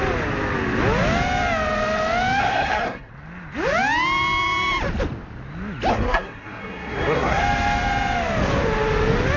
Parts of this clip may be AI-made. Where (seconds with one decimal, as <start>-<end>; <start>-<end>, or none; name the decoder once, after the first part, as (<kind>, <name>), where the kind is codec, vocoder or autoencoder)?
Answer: 2.4-3.1 (codec, SNAC); 5.9-7.4